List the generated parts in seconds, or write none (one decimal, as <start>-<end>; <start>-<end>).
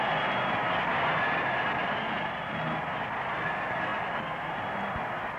1.8-2.6; 3.9-4.5